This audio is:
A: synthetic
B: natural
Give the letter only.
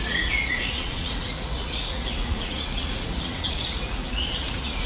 A